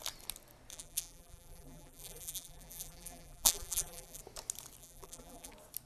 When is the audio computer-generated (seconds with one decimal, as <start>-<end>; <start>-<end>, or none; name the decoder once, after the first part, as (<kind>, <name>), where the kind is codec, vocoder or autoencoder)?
0.7-4.2 (vocoder, BigVGAN v2); 4.8-5.5